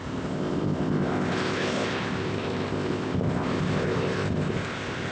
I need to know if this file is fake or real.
fake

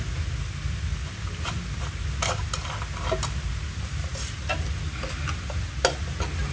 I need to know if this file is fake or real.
real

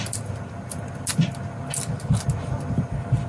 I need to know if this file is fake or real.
real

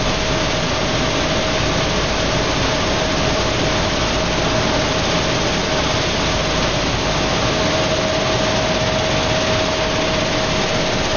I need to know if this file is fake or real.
real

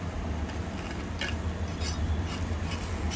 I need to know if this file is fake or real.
real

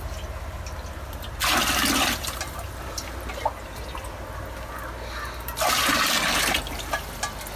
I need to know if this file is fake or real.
real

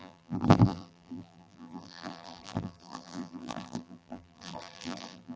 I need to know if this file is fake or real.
fake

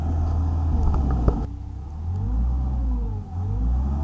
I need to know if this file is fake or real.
real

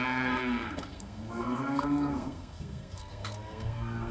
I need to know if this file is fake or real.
fake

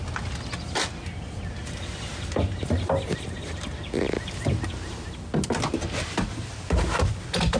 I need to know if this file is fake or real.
real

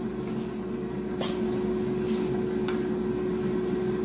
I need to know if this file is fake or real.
real